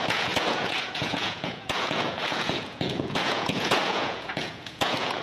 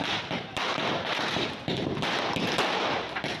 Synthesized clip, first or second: first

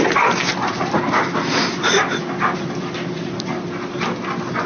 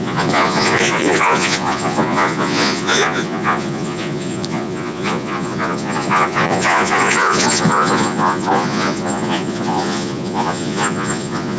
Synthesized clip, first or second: second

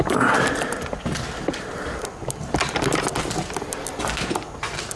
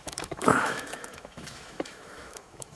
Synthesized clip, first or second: second